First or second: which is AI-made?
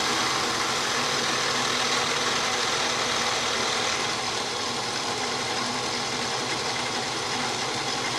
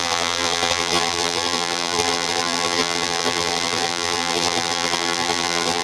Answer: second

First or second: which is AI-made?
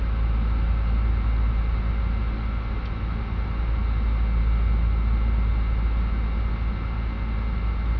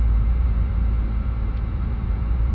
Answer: second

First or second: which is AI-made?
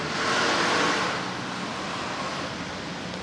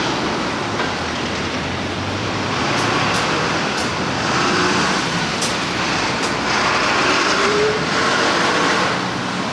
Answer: second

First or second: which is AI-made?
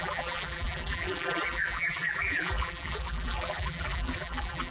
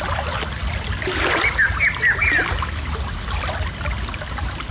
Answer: first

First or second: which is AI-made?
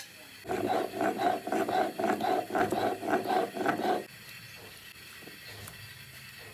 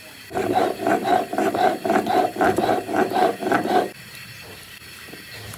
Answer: second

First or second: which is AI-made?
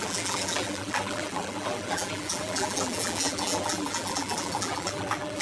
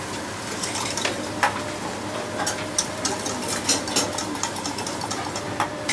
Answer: first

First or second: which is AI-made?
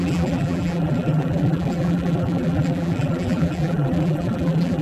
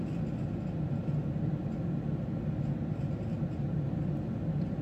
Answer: first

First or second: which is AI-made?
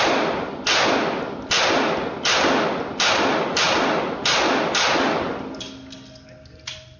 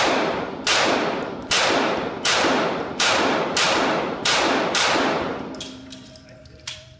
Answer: second